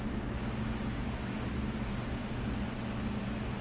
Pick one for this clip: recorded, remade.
recorded